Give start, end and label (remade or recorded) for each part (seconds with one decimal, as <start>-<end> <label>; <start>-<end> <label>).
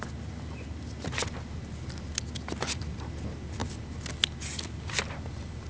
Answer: 0.0-5.7 recorded